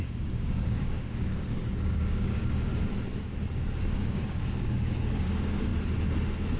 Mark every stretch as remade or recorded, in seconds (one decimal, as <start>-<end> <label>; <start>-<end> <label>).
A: 0.0-2.7 remade; 2.7-3.8 recorded; 3.8-5.7 remade; 5.7-6.6 recorded